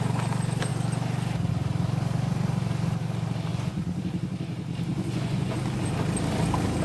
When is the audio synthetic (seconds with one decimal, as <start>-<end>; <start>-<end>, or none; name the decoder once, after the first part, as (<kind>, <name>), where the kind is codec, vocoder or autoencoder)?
3.5-4.0 (vocoder, Vocos); 4.9-5.6